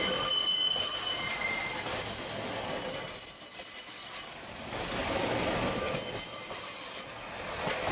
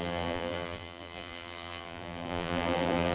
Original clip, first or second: first